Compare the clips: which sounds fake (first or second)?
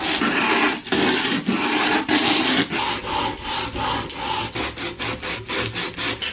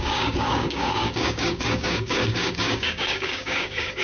second